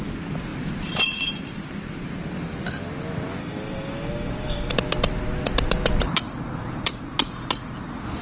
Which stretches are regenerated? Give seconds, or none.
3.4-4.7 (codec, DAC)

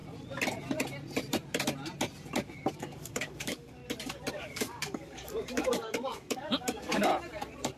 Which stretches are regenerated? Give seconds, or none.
2.7-3.8 (codec, DAC); 4.3-7.1

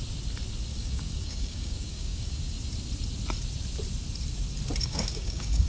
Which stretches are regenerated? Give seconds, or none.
0.7-2.4 (codec, DAC); 4.8-5.7